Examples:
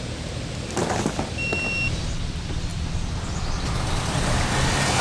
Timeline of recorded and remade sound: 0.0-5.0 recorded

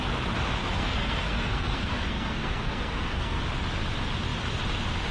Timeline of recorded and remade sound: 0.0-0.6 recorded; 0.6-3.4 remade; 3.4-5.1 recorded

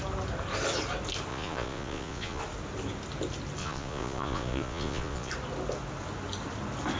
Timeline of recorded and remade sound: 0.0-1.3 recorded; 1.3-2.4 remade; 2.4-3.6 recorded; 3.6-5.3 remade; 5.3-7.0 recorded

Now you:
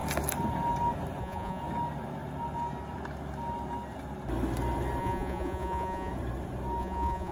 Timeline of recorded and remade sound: 0.0-1.2 recorded; 1.2-1.6 remade; 1.6-5.0 recorded; 5.0-6.1 remade; 6.1-6.8 recorded; 6.8-7.3 remade

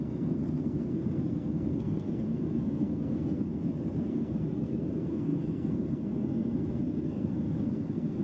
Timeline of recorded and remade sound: 0.0-8.2 remade